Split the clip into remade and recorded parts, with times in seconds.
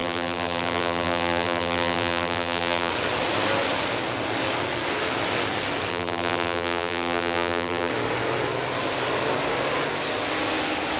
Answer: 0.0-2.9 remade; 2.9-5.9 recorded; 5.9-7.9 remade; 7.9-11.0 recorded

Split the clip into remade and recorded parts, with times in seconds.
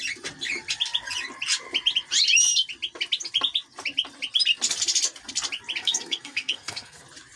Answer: 0.0-5.8 recorded; 5.8-7.0 remade; 7.0-7.4 recorded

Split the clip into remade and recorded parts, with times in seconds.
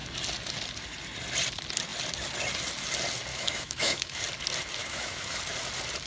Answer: 0.0-3.3 recorded; 3.3-4.2 remade; 4.2-4.8 recorded; 4.8-5.4 remade; 5.4-6.1 recorded